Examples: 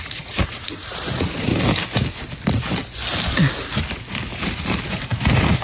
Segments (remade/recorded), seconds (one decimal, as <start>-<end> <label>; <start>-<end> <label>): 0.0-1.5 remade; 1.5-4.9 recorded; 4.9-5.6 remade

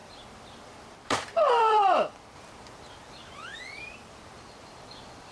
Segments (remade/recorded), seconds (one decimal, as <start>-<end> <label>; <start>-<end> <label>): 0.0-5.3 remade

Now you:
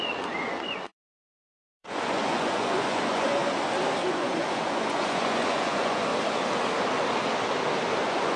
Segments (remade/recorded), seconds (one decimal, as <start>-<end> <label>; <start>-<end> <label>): 0.0-3.4 remade; 3.4-4.1 recorded; 4.1-6.1 remade; 6.1-8.0 recorded; 8.0-8.4 remade

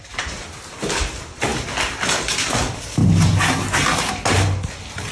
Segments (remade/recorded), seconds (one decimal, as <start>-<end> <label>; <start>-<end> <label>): 0.0-5.1 recorded

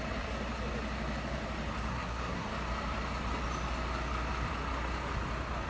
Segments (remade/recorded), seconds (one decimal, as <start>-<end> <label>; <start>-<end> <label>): 0.0-1.9 recorded; 1.9-2.5 remade; 2.5-5.7 recorded

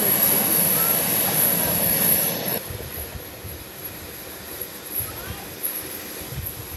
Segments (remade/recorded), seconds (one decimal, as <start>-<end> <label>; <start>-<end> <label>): 0.0-6.8 recorded

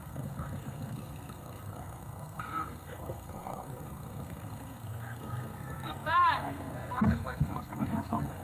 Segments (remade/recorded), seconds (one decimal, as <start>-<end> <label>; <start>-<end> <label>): 0.0-8.4 remade

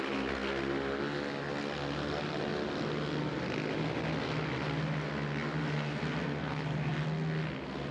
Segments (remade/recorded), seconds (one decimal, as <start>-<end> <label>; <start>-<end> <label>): 0.0-7.9 recorded